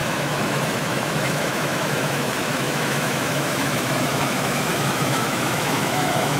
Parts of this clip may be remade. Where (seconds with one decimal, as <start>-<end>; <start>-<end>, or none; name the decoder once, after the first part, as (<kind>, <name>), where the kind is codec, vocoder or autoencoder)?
0.0-6.4 (autoencoder, DAC-VAE)